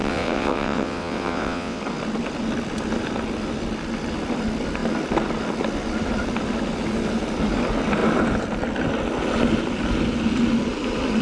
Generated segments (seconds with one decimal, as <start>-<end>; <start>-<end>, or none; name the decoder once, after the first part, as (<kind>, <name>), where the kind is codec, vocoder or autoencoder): 0.0-1.8 (vocoder, WaveNeXt)